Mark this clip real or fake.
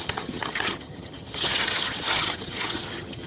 fake